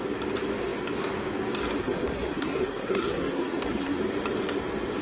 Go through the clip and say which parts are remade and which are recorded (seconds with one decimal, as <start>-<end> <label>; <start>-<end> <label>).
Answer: 0.0-1.8 recorded; 1.8-4.0 remade; 4.0-5.0 recorded